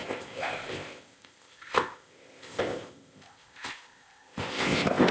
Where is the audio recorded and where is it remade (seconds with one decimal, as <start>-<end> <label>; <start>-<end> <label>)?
0.0-5.1 remade